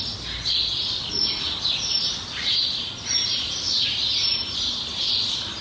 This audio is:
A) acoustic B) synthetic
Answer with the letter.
A